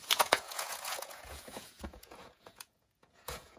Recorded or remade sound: remade